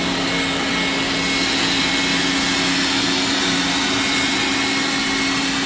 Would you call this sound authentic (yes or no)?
yes